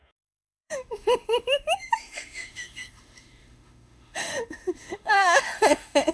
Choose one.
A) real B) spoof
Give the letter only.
B